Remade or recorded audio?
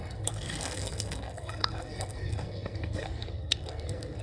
remade